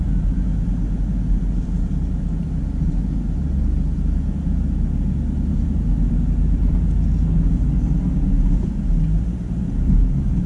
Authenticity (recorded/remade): recorded